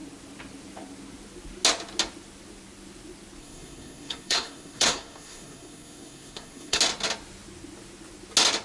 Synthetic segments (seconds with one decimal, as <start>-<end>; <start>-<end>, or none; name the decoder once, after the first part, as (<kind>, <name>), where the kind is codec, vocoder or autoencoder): 3.4-6.8 (codec, SNAC)